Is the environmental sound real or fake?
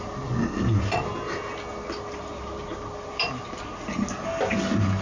real